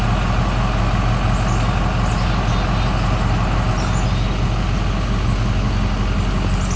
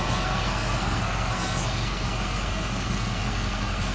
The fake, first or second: second